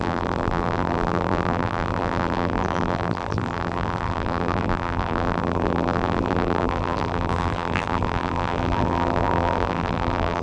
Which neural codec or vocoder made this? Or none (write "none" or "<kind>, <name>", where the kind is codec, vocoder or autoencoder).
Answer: vocoder, BigVGAN v2